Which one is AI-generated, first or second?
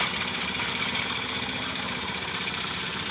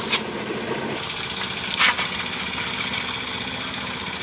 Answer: first